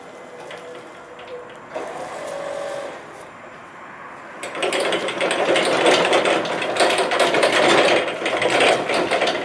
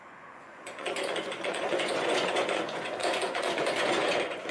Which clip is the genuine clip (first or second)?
first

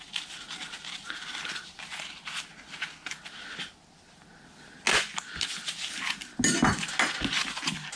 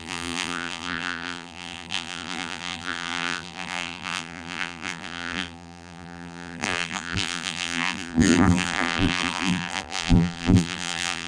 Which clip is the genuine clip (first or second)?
first